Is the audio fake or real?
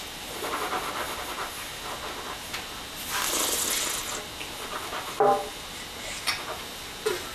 real